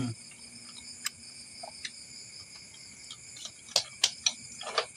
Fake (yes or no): no